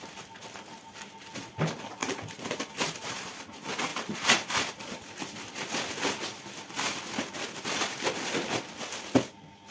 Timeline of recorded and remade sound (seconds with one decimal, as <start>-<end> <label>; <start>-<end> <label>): 0.0-2.0 recorded; 2.0-3.4 remade; 3.4-3.9 recorded; 3.9-5.5 remade; 5.5-9.7 recorded